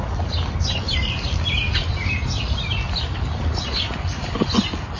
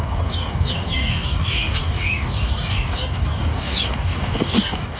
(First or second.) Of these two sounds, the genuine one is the first